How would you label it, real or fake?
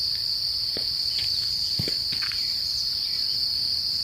fake